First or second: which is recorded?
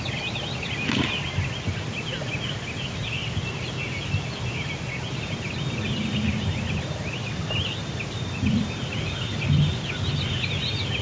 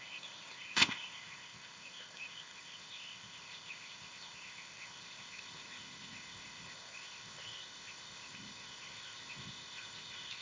first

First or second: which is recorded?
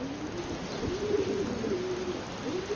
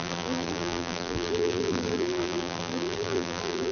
first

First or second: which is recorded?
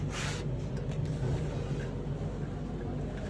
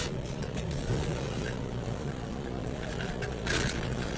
first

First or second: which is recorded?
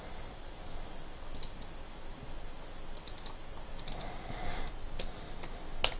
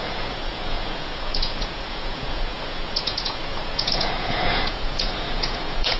first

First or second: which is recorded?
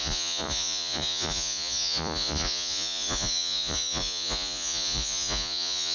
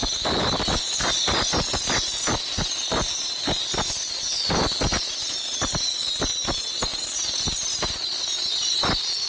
second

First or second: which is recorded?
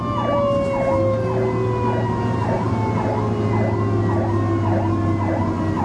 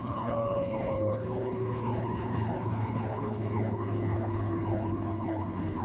first